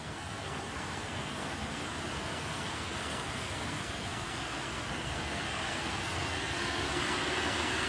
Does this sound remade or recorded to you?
remade